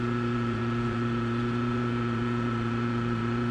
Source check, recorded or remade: remade